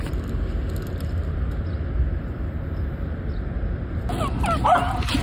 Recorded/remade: recorded